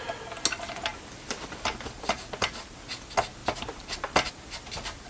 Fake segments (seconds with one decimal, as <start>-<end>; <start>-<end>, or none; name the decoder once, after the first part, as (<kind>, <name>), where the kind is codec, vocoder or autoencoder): 0.9-2.2 (vocoder, BigVGAN v2)